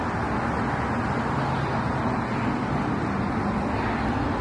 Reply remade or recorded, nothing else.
recorded